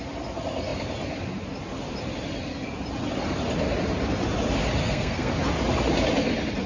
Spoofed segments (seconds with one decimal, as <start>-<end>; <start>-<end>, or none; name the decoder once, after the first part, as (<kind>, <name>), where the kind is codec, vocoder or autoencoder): 4.8-5.3 (codec, SNAC)